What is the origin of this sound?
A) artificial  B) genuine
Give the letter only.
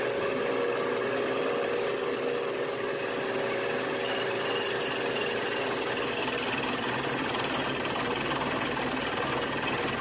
B